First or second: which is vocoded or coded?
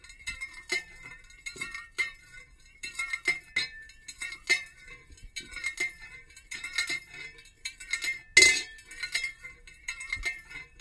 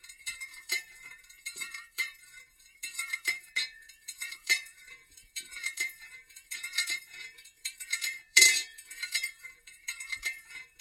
second